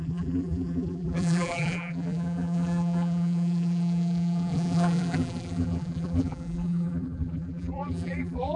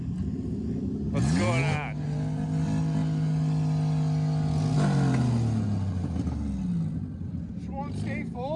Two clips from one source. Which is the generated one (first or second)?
first